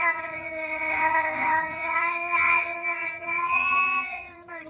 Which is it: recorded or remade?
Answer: remade